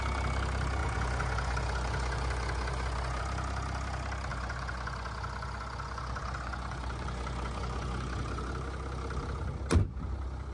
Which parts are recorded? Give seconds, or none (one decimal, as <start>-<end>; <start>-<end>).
0.0-0.8; 3.2-4.3; 8.5-10.5